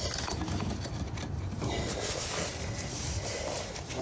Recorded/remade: recorded